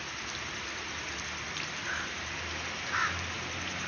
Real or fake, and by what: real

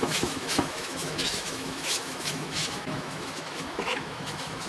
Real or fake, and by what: fake, autoencoder, DAC-VAE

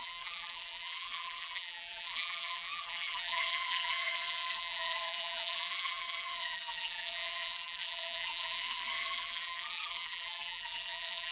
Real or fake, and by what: fake, vocoder, BigVGAN v2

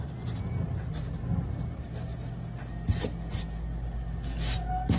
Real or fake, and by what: real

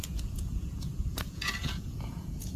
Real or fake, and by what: fake, vocoder, Vocos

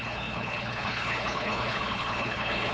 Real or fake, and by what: fake, codec, HILCodec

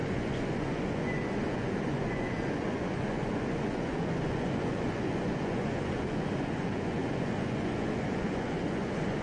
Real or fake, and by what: fake, vocoder, Vocos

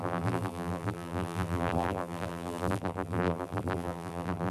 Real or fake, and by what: fake, vocoder, BigVGAN v2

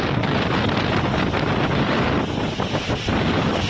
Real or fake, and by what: real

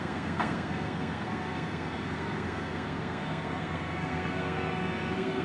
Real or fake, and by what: fake, codec, SNAC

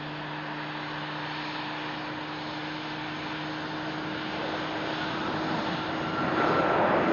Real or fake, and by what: real